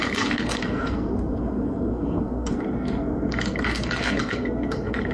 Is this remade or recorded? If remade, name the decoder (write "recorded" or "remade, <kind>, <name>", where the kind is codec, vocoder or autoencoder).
remade, codec, SNAC